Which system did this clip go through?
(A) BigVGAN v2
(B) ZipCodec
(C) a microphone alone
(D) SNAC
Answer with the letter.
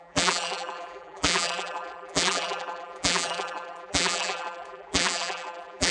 A